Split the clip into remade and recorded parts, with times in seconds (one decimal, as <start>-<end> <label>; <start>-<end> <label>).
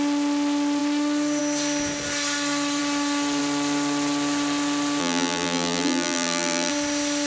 0.0-5.0 recorded; 5.0-6.7 remade; 6.7-7.3 recorded